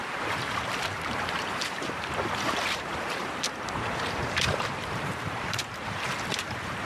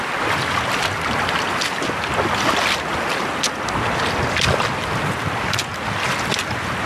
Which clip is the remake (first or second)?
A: first